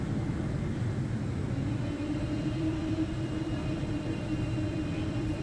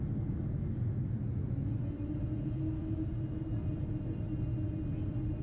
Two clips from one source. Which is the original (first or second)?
second